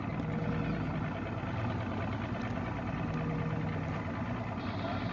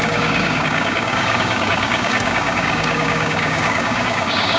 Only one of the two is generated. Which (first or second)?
second